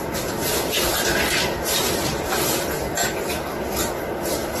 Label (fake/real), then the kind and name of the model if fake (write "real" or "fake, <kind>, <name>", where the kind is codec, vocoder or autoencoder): fake, vocoder, BigVGAN v2